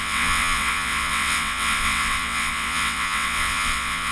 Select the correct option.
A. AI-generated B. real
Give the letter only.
A